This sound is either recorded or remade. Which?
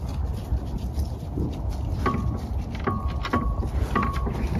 recorded